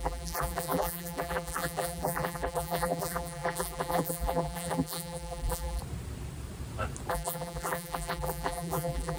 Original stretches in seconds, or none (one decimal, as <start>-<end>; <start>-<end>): 5.8-7.1